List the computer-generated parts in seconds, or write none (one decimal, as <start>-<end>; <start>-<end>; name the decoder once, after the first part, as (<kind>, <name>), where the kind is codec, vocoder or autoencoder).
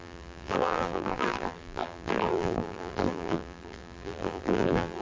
0.0-5.0 (vocoder, BigVGAN v2)